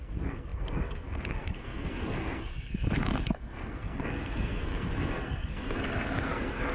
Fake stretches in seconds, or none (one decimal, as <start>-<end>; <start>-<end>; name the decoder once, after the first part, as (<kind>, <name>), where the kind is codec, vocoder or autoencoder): 0.0-6.7 (codec, SNAC)